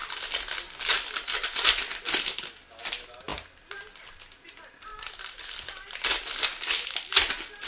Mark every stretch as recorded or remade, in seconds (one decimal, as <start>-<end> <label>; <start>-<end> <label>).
0.0-7.7 recorded